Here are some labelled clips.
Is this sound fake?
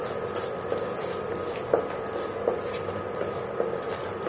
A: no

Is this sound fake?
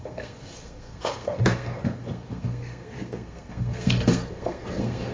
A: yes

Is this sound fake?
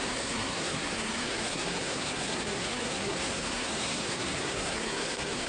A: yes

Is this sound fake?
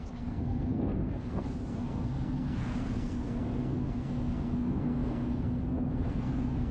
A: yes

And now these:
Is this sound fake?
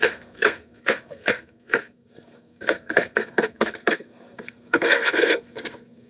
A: yes